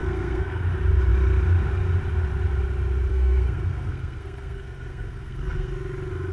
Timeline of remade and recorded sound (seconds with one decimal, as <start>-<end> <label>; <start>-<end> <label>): 0.0-0.6 remade; 0.6-3.1 recorded; 3.1-5.7 remade; 5.7-6.3 recorded